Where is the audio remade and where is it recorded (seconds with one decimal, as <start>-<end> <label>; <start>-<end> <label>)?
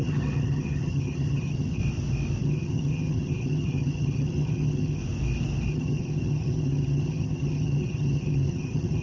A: 0.0-1.8 remade; 1.8-2.4 recorded; 2.4-5.0 remade; 5.0-5.7 recorded; 5.7-9.0 remade